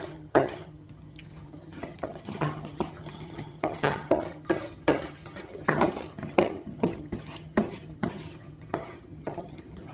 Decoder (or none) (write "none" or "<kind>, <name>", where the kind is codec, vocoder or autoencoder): vocoder, HiFi-GAN